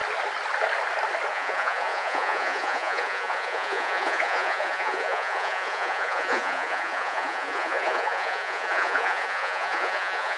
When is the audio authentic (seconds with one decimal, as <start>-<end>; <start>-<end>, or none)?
0.0-1.3